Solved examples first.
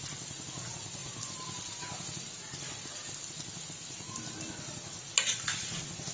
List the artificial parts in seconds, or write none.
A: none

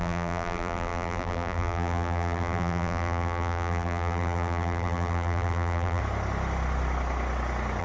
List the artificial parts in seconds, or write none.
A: 0.0-6.0 (vocoder, BigVGAN v2)

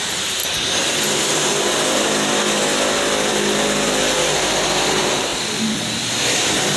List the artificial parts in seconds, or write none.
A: 0.0-0.4 (vocoder, BigVGAN v2); 3.3-5.3

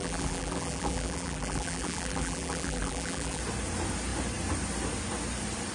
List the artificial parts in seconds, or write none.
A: 0.0-3.4 (vocoder, BigVGAN v2)

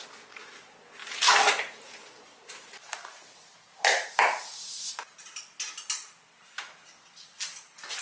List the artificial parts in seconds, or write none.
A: 1.0-4.6 (vocoder, BigVGAN v2)

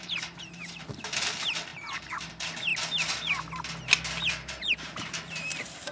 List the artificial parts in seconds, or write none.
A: 0.0-2.7 (vocoder, BigVGAN v2); 4.3-5.9